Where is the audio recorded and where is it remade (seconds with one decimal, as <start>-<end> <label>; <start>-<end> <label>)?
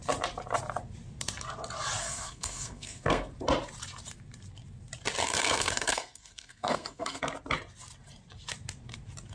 0.0-2.0 recorded; 2.0-3.3 remade; 3.3-5.2 recorded; 5.2-7.2 remade; 7.2-9.3 recorded